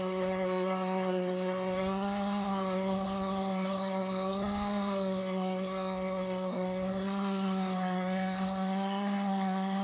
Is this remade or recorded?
remade